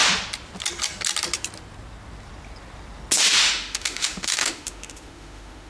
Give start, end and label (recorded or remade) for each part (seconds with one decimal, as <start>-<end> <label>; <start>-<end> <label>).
0.0-3.4 recorded; 3.4-5.7 remade

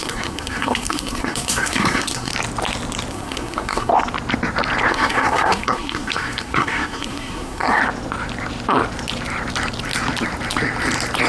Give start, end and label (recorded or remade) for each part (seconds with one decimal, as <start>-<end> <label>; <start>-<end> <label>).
0.0-2.3 remade; 2.3-3.1 recorded; 3.1-3.9 remade; 3.9-4.9 recorded; 4.9-7.8 remade; 7.8-11.3 recorded

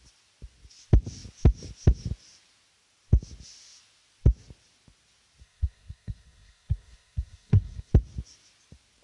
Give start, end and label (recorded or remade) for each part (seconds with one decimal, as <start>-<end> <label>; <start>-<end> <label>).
0.0-5.4 recorded; 5.4-7.9 remade; 7.9-9.0 recorded

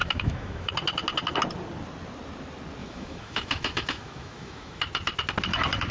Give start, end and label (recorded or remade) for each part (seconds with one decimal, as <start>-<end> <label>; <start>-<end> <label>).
0.0-0.7 remade; 0.7-2.8 recorded; 2.8-4.8 remade; 4.8-5.9 recorded

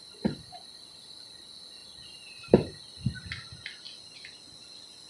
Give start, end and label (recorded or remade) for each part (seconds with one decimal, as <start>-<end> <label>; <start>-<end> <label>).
0.0-5.1 recorded

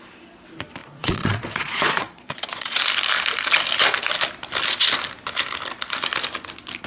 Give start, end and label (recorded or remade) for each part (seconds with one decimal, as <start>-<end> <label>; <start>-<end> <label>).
0.0-0.8 recorded; 0.8-2.8 remade; 2.8-6.9 recorded

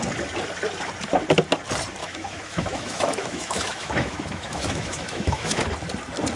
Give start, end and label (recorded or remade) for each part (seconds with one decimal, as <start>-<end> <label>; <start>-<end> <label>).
0.0-2.0 recorded; 2.0-5.6 remade; 5.6-6.4 recorded

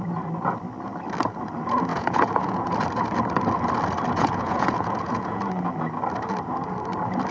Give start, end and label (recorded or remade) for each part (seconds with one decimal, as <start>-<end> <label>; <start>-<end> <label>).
0.0-1.9 recorded; 1.9-2.7 remade; 2.7-4.2 recorded; 4.2-5.4 remade; 5.4-7.3 recorded